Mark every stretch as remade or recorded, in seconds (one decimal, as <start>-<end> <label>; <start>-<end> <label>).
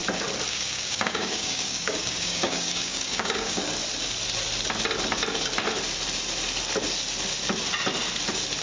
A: 0.0-0.5 recorded; 0.5-3.6 remade; 3.6-8.6 recorded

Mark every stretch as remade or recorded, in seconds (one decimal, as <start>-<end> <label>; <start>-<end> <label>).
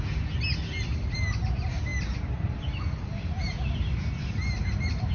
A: 0.0-5.1 recorded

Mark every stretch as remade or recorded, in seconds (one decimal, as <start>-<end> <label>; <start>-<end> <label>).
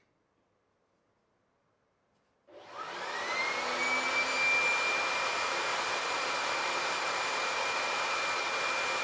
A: 0.0-5.7 recorded; 5.7-8.6 remade; 8.6-9.0 recorded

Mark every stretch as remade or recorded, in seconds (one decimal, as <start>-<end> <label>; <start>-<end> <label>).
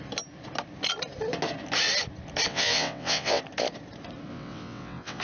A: 0.0-2.5 recorded; 2.5-3.4 remade; 3.4-4.3 recorded; 4.3-5.2 remade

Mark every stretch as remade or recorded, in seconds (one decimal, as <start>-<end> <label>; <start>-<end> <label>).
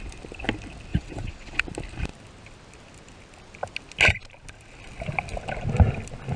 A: 0.0-0.9 recorded; 0.9-1.6 remade; 1.6-6.4 recorded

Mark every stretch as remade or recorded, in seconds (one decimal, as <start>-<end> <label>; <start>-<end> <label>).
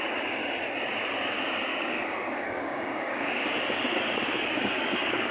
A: 0.0-1.7 recorded; 1.7-5.3 remade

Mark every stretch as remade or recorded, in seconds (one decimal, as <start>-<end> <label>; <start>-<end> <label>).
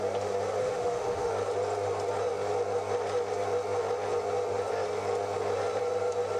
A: 0.0-0.6 recorded; 0.6-1.3 remade; 1.3-6.4 recorded